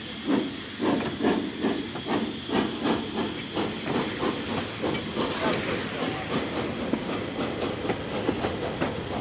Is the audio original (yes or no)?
yes